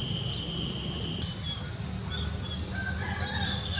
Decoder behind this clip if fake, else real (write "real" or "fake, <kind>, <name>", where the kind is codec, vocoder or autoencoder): real